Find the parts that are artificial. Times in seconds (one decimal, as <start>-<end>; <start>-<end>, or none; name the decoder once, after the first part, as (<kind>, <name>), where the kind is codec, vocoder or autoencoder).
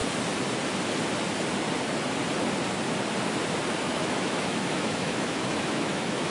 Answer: 3.8-6.3 (autoencoder, DAC-VAE)